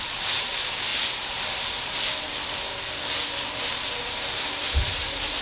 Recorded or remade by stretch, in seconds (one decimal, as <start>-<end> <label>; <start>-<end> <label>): 0.0-0.9 remade; 0.9-3.9 recorded; 3.9-5.4 remade